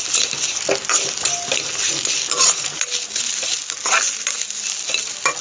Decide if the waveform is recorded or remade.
recorded